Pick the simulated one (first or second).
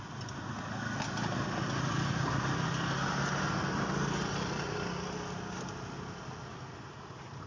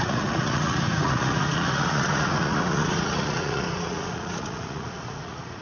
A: second